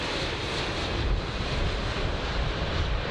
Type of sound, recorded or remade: remade